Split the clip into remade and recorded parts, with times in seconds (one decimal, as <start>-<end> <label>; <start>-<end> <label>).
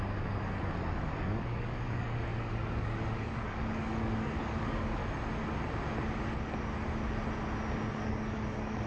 0.0-5.0 remade; 5.0-7.9 recorded; 7.9-8.9 remade